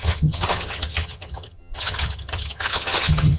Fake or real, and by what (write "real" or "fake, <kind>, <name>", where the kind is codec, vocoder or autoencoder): fake, vocoder, HiFi-GAN